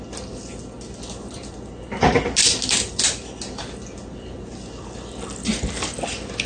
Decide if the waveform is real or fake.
real